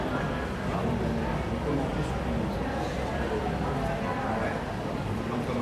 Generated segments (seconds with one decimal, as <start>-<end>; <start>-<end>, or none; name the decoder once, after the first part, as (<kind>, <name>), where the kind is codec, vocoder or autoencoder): none